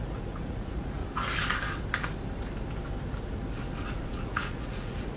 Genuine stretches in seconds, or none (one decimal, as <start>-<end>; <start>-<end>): 1.0-4.1